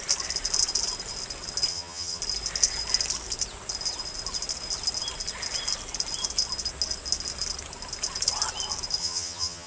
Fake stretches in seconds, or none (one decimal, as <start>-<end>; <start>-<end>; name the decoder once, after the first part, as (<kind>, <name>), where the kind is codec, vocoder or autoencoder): 1.7-2.2 (vocoder, HiFi-GAN); 9.0-9.7